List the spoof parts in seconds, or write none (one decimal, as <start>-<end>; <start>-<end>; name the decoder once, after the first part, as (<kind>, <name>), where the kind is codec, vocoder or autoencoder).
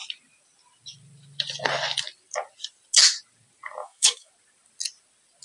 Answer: 3.8-4.3 (autoencoder, DAC-VAE)